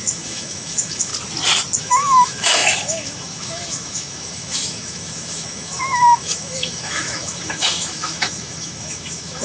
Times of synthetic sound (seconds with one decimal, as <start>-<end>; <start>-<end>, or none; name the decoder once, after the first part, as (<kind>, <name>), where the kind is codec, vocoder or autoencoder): 0.0-1.1 (autoencoder, DAC-VAE); 1.8-9.4